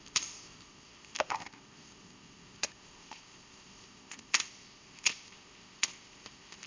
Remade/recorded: remade